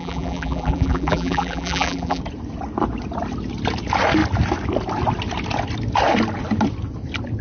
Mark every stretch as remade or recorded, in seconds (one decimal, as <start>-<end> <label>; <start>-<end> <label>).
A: 0.0-2.2 remade; 2.2-7.4 recorded